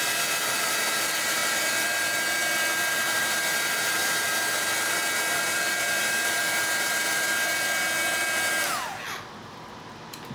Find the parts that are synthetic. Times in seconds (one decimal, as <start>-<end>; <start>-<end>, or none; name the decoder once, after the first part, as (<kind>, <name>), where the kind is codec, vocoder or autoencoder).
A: none